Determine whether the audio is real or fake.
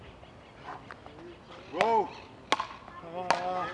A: real